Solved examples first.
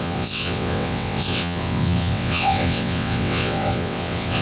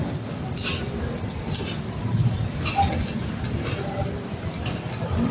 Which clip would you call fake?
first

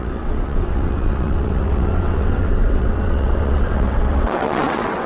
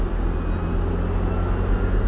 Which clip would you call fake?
first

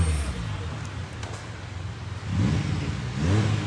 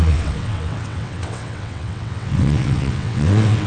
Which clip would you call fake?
second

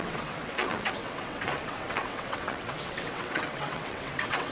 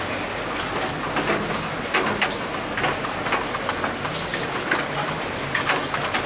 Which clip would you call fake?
first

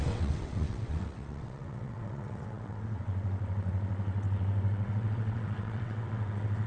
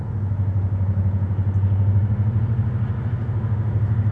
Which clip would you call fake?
first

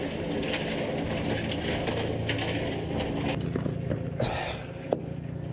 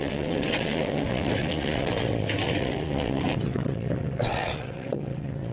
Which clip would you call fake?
second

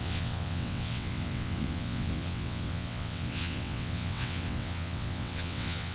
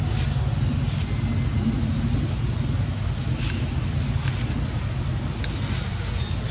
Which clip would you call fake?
first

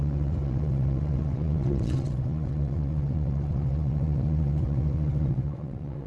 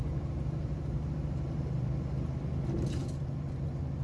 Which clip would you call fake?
first